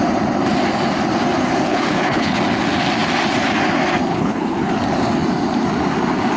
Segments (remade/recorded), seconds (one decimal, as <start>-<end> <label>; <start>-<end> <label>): 0.0-1.7 recorded; 1.7-2.4 remade; 2.4-4.1 recorded; 4.1-4.7 remade; 4.7-6.4 recorded